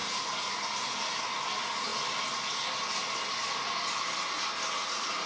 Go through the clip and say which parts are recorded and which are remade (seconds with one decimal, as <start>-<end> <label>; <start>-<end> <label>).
0.0-0.5 remade; 0.5-5.3 recorded